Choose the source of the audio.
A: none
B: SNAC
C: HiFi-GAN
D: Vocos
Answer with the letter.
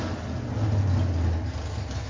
A